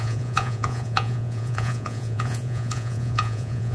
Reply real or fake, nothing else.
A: fake